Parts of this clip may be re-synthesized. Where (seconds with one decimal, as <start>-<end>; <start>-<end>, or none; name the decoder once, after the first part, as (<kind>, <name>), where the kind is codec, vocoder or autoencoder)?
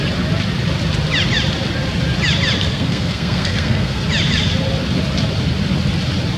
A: 2.7-4.0 (codec, SNAC)